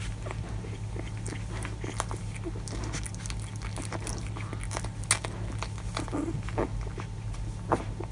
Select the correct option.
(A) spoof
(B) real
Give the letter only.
B